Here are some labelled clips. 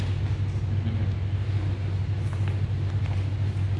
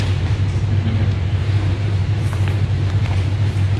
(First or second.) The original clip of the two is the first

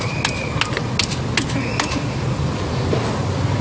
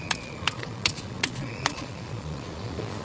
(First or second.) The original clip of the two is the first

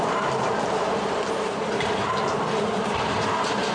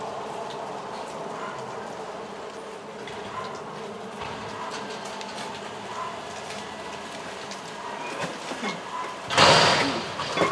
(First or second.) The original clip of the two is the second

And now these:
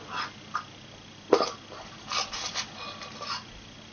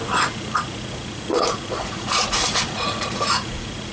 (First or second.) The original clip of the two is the first